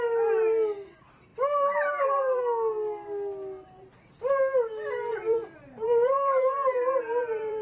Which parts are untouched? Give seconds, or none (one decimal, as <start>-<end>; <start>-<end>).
0.0-1.3; 2.4-5.1

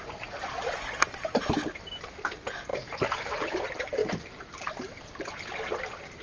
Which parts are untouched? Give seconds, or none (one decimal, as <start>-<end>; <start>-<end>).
0.0-2.7; 3.6-4.0; 5.3-6.2